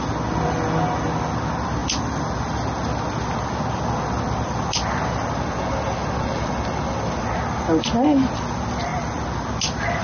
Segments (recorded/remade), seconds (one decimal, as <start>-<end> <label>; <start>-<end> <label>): 0.0-10.0 recorded